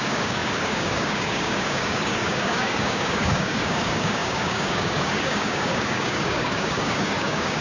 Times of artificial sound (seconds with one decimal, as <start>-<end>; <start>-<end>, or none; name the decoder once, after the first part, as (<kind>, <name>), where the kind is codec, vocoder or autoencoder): 0.0-7.6 (codec, DAC)